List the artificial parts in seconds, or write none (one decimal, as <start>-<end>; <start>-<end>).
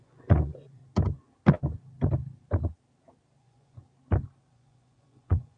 0.0-0.8; 3.4-3.8; 4.5-5.6